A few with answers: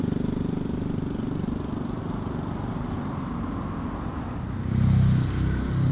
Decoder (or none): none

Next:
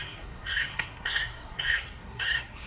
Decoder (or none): codec, SNAC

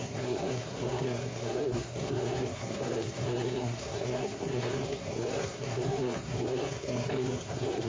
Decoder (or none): codec, SNAC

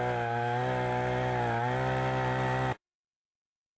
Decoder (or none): none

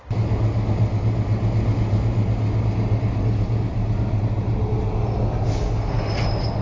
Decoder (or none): none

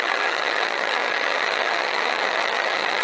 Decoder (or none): vocoder, HiFi-GAN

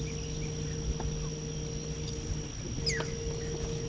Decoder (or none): none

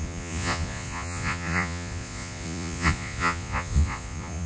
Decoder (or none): vocoder, Vocos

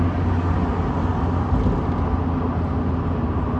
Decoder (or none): none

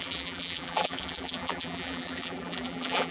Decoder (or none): vocoder, BigVGAN v2